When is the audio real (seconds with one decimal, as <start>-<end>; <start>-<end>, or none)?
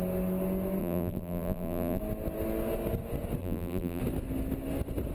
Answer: 0.0-0.8; 2.0-3.4; 4.0-5.1